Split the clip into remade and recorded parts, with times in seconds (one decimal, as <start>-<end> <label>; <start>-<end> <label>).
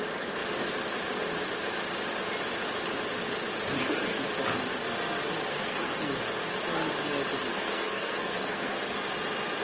0.0-5.5 recorded; 5.5-6.2 remade; 6.2-7.5 recorded; 7.5-8.8 remade; 8.8-9.6 recorded